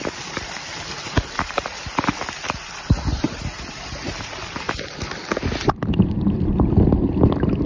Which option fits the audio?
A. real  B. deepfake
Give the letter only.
A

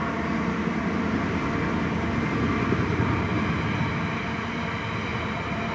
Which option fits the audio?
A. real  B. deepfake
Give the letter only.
A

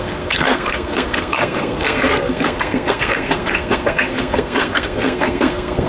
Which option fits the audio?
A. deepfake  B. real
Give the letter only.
A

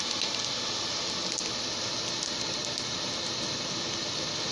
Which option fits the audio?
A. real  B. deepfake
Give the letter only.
A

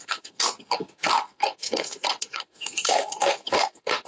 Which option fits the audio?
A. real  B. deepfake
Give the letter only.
B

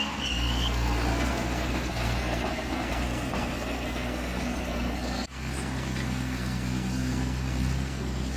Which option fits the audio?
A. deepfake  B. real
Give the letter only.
A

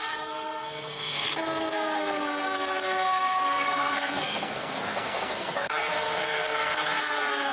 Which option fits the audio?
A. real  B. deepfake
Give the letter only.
B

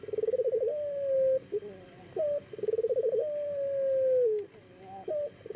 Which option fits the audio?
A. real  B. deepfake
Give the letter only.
A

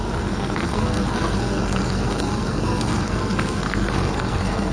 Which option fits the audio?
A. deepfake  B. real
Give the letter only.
A